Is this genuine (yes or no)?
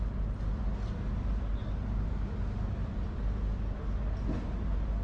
yes